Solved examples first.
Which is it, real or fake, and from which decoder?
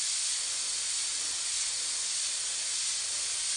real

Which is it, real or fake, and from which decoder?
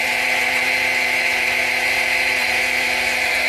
fake, vocoder, BigVGAN v2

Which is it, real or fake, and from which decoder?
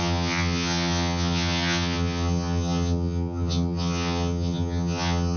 fake, vocoder, HiFi-GAN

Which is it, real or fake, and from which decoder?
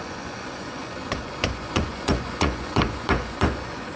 fake, vocoder, Vocos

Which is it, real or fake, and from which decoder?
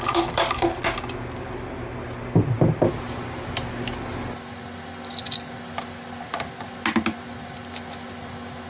real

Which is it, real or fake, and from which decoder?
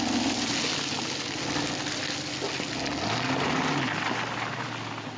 real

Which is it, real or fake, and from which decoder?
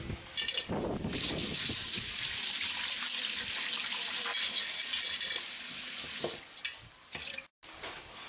real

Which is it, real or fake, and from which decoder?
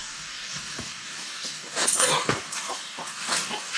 fake, codec, DAC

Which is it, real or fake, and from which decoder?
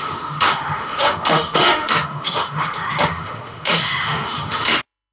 fake, autoencoder, DAC-VAE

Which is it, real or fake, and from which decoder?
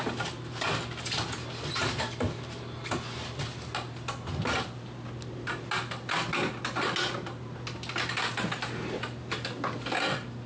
real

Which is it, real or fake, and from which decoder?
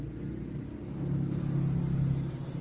real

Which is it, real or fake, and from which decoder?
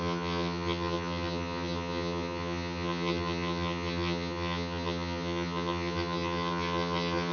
fake, vocoder, HiFi-GAN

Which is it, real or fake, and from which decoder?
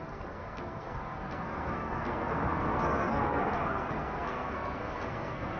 fake, codec, SNAC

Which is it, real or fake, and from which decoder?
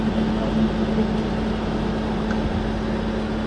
real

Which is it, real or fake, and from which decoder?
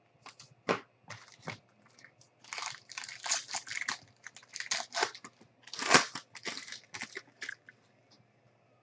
real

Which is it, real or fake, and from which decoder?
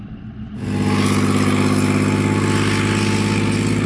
real